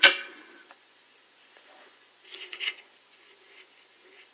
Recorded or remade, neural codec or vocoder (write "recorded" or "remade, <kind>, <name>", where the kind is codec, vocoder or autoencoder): remade, vocoder, Vocos